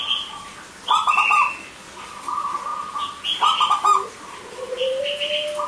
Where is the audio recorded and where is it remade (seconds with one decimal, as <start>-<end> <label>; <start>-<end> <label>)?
0.0-5.7 recorded